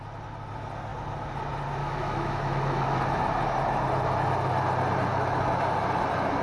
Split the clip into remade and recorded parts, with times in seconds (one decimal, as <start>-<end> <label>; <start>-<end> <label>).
0.0-1.8 recorded; 1.8-3.0 remade; 3.0-5.1 recorded; 5.1-5.6 remade; 5.6-6.4 recorded